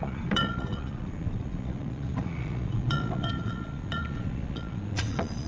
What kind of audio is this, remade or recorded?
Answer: remade